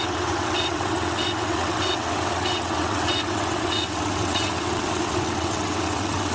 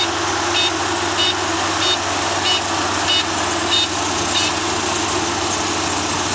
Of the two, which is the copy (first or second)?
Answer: first